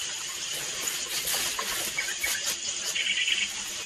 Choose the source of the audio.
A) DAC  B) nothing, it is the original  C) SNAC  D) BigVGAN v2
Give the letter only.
B